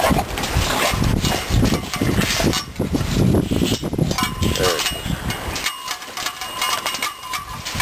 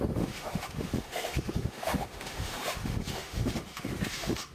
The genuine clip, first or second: first